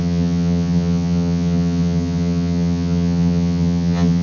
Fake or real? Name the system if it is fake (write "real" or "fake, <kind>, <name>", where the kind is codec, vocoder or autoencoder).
fake, vocoder, HiFi-GAN